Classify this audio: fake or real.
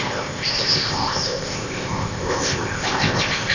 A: fake